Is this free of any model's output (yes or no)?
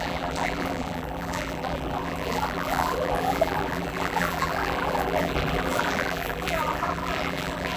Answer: no